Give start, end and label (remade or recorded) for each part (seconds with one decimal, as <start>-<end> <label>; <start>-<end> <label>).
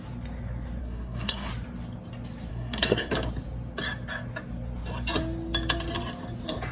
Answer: 0.0-0.8 recorded; 0.8-1.5 remade; 1.5-2.5 recorded; 2.5-3.1 remade; 3.1-6.7 recorded